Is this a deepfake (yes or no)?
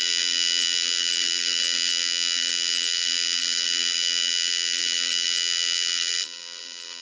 yes